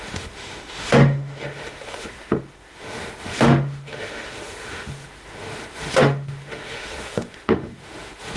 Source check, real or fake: fake